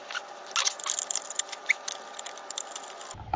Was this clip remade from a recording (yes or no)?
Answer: no